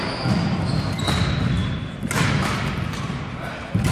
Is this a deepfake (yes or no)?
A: no